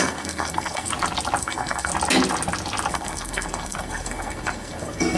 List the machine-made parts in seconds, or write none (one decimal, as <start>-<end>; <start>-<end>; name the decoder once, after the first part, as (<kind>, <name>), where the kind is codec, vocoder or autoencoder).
0.0-0.9 (codec, SNAC); 1.4-1.9; 2.9-5.2